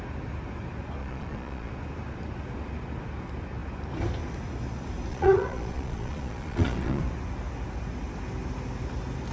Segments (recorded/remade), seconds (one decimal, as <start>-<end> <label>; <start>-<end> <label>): 0.0-1.0 recorded; 1.0-1.7 remade; 1.7-5.1 recorded; 5.1-7.0 remade; 7.0-9.3 recorded